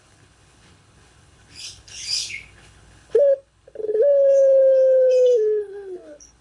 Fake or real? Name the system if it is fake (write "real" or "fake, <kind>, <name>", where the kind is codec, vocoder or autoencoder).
fake, codec, HILCodec